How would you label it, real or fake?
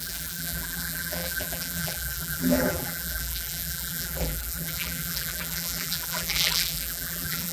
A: fake